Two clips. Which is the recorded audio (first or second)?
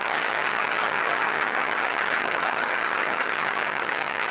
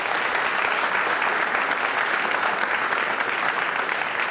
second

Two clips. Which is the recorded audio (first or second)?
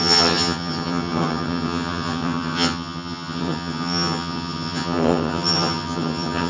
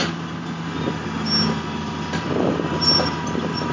second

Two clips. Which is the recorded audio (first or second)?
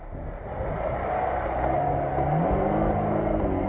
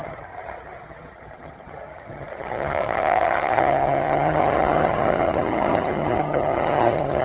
first